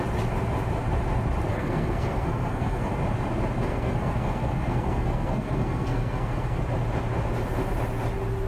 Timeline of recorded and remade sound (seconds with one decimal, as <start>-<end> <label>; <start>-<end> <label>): 0.0-1.5 recorded; 1.5-2.9 remade; 2.9-3.7 recorded; 3.7-6.6 remade; 6.6-8.5 recorded